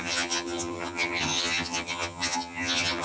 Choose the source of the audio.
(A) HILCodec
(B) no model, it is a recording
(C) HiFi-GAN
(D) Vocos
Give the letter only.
C